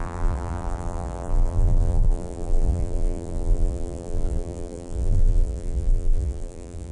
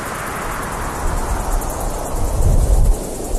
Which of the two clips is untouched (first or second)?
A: second